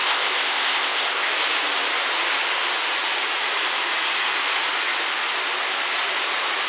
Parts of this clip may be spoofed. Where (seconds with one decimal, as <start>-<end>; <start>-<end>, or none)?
0.0-1.3